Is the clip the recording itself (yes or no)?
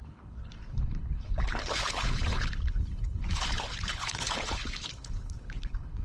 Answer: no